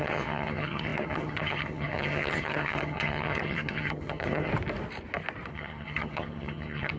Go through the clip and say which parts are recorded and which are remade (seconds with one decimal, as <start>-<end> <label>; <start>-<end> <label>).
0.0-4.5 remade; 4.5-5.5 recorded; 5.5-7.0 remade